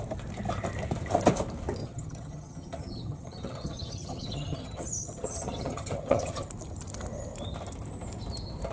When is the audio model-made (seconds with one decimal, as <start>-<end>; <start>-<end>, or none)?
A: 1.8-6.5